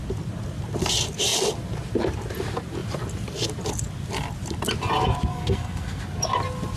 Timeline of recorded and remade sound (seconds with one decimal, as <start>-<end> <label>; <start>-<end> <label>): 0.0-5.3 recorded; 5.3-6.0 remade; 6.0-6.8 recorded